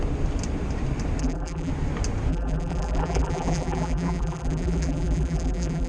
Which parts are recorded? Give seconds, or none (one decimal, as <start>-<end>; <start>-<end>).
0.0-1.2; 1.7-2.3